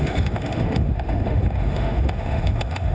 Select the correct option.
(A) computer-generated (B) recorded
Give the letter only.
A